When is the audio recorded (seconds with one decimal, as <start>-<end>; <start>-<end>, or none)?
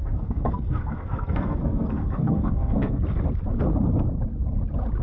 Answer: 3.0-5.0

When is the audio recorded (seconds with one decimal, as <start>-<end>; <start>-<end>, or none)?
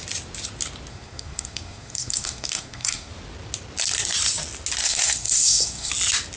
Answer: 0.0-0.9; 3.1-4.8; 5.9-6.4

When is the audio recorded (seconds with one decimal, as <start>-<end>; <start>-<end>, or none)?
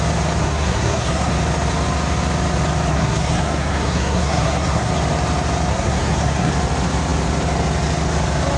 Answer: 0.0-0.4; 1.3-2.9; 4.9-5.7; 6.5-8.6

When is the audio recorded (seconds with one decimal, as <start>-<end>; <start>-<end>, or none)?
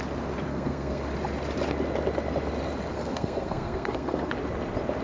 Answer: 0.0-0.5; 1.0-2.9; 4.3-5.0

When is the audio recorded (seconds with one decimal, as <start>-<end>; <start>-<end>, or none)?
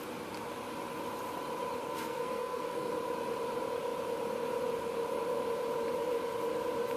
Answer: 0.0-1.8; 2.9-7.0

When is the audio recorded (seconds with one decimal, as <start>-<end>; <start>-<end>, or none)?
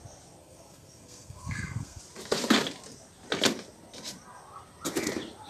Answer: 0.0-0.4; 2.0-5.5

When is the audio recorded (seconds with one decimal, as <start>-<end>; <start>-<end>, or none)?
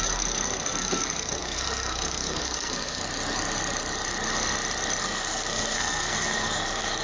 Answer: 3.1-5.0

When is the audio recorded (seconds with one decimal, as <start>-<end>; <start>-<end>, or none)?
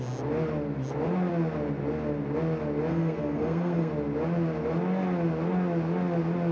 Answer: 0.0-2.9; 3.9-6.5